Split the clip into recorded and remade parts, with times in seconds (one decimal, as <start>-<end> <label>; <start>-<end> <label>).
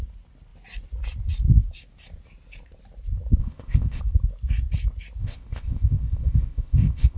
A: 0.0-3.4 recorded; 3.4-4.0 remade; 4.0-5.2 recorded; 5.2-7.2 remade